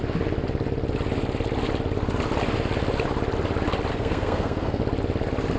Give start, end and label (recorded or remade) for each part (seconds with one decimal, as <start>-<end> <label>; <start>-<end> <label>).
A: 0.0-3.9 recorded; 3.9-4.8 remade; 4.8-5.6 recorded